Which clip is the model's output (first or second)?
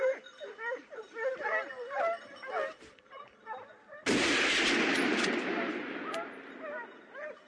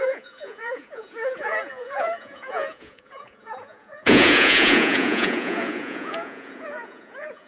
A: second